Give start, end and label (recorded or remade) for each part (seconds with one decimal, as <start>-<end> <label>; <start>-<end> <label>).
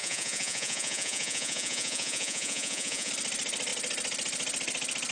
0.0-3.1 remade; 3.1-5.1 recorded